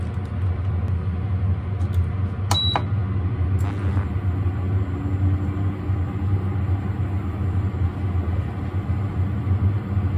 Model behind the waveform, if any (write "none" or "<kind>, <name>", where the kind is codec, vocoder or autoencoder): none